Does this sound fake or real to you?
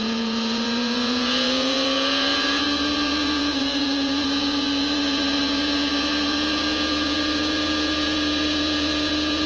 fake